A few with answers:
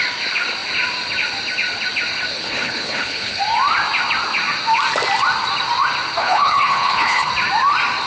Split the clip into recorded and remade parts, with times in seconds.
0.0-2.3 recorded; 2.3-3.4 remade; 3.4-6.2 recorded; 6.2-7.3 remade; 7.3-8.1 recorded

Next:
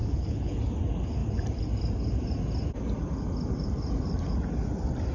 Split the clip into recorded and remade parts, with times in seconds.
0.0-0.6 remade; 0.6-5.1 recorded

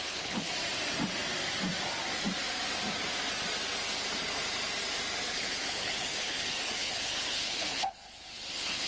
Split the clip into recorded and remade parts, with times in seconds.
0.0-0.5 remade; 0.5-5.3 recorded; 5.3-8.9 remade

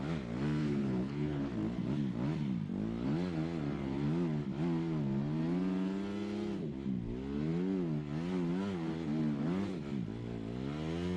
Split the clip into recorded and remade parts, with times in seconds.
0.0-0.6 recorded; 0.6-1.5 remade; 1.5-11.2 recorded

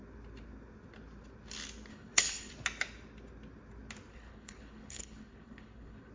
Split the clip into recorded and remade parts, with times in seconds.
0.0-1.9 recorded; 1.9-2.5 remade; 2.5-4.1 recorded; 4.1-6.1 remade

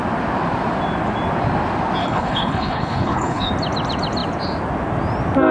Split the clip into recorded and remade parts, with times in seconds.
0.0-2.0 recorded; 2.0-3.5 remade; 3.5-5.5 recorded

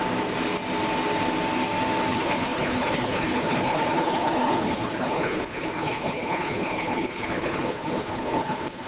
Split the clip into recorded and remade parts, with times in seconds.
0.0-2.1 recorded; 2.1-8.9 remade